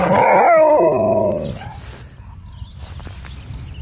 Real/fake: real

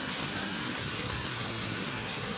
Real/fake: fake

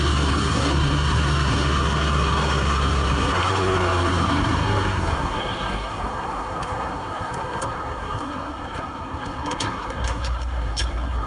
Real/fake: fake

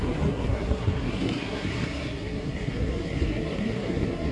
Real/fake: fake